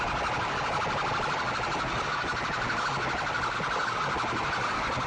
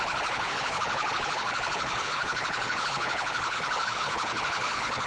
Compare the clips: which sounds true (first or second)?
first